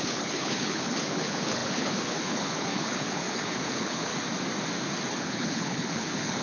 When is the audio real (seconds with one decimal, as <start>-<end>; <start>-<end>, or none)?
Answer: 4.1-5.1